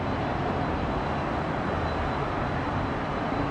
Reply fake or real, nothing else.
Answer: real